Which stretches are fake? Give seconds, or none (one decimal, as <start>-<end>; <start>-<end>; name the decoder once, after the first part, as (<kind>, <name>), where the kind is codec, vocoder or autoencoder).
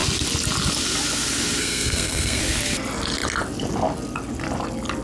1.6-2.4 (codec, SNAC)